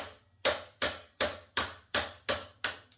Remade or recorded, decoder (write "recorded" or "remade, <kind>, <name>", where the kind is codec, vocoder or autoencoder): recorded